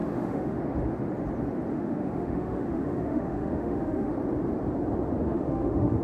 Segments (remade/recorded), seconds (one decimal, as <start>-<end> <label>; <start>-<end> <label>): 0.0-0.6 remade; 0.6-1.7 recorded; 1.7-4.1 remade; 4.1-5.2 recorded; 5.2-6.0 remade